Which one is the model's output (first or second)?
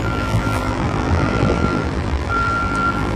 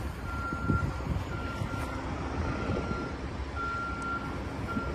first